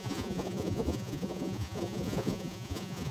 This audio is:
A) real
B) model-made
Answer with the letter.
B